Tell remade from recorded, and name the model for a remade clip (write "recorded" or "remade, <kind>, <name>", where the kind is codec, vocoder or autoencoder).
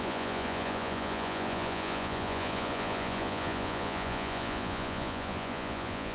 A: remade, vocoder, Vocos